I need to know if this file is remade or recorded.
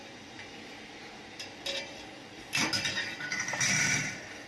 recorded